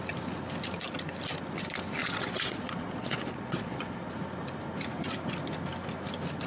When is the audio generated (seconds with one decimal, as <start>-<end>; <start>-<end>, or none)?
2.0-4.1